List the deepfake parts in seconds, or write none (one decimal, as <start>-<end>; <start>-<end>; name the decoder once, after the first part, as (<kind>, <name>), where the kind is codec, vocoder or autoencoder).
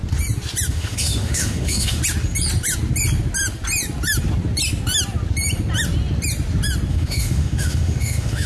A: 0.7-2.0 (autoencoder, DAC-VAE); 6.9-8.5